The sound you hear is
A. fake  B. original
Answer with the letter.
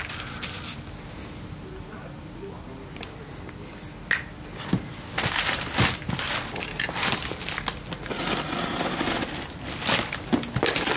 B